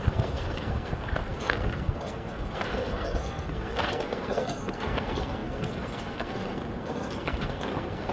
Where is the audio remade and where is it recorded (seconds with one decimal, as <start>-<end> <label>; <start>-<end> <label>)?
0.0-8.1 remade